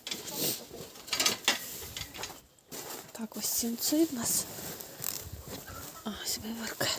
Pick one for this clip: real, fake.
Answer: real